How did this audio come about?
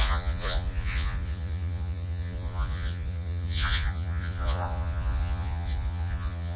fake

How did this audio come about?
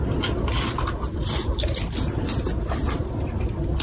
real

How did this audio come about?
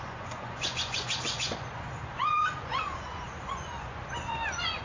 fake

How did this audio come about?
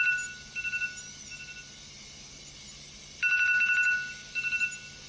real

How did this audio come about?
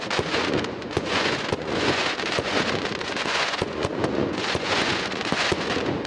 fake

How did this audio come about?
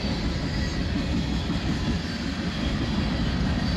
real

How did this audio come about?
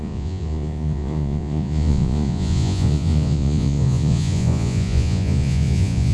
fake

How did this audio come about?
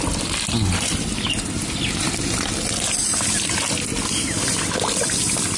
real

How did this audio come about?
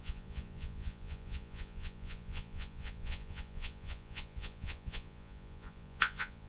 fake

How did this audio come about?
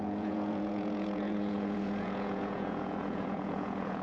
fake